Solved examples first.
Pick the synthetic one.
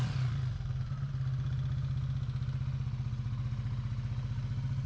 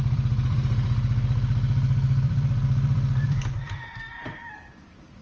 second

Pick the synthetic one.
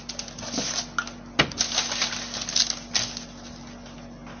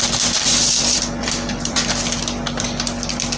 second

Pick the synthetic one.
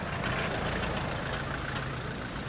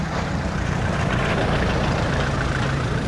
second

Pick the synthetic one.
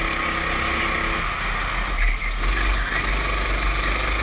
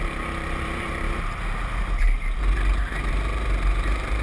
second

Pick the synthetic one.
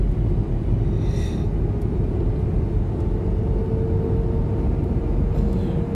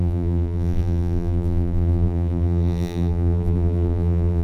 second